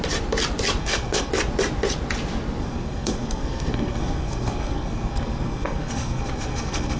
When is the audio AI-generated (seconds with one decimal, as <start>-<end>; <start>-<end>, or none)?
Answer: 0.8-1.3; 2.6-7.0